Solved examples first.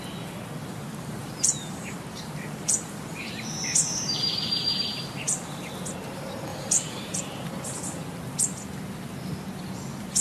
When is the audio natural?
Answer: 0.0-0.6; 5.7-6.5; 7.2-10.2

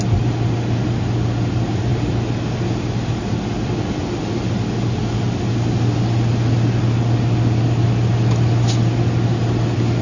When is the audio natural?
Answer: 0.0-10.0

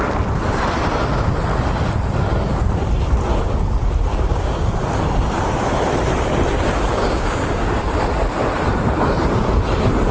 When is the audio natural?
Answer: 0.0-4.1; 4.7-6.9; 7.8-10.1

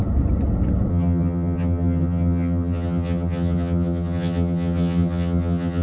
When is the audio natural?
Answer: 0.0-0.9

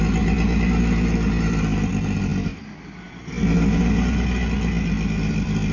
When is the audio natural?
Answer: 0.0-5.7

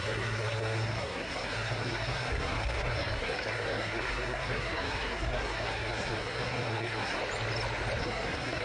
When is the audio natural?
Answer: 7.2-8.0